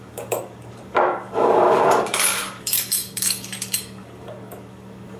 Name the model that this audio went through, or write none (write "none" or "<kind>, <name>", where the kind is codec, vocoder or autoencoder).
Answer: codec, DAC